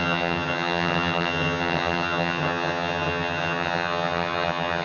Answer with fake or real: fake